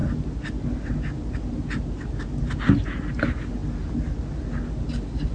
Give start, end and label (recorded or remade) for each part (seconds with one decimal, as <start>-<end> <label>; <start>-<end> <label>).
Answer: 0.0-5.3 recorded